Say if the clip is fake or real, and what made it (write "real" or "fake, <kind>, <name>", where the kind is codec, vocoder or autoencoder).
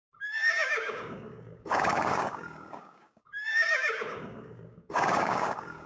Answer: fake, codec, DAC